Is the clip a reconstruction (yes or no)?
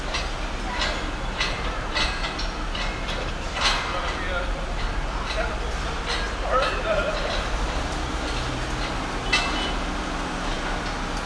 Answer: no